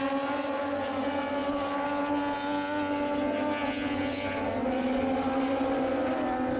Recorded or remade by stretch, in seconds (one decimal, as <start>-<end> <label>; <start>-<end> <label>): 0.0-6.6 recorded